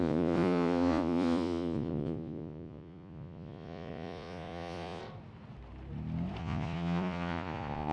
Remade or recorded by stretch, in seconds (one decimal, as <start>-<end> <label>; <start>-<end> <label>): 0.0-5.0 remade; 5.0-6.4 recorded; 6.4-7.9 remade